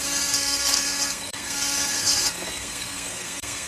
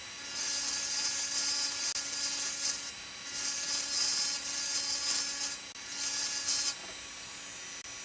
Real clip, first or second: second